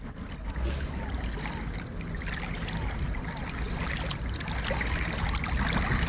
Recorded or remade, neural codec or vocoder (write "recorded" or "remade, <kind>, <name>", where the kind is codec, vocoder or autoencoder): recorded